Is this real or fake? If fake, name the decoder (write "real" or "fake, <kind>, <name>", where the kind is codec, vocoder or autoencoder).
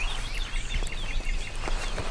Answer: real